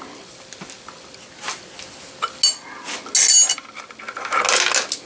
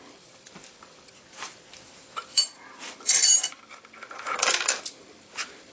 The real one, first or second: first